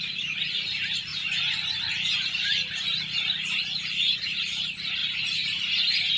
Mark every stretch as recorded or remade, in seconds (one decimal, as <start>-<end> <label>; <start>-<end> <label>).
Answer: 0.0-5.0 remade; 5.0-5.7 recorded; 5.7-6.2 remade